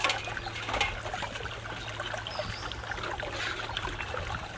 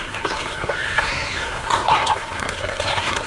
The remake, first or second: second